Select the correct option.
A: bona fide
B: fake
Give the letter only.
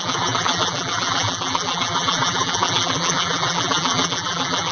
B